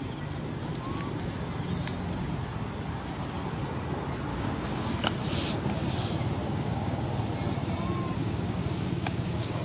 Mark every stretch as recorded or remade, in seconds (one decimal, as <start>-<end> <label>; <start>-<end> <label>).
0.0-4.3 recorded; 4.3-4.9 remade; 4.9-6.4 recorded; 6.4-7.0 remade; 7.0-8.2 recorded; 8.2-9.6 remade